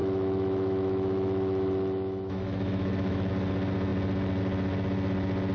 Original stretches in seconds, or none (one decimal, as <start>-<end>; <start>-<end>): 3.3-5.5